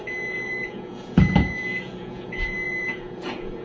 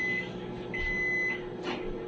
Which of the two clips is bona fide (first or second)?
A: second